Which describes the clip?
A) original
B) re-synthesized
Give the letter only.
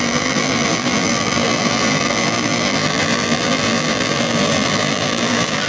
B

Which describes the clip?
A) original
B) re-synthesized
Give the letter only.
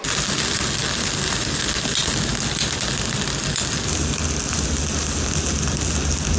A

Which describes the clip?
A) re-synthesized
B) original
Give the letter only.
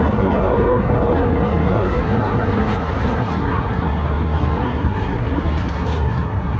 A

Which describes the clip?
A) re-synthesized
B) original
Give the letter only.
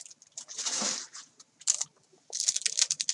B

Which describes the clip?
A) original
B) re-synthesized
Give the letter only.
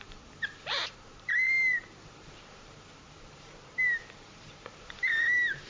B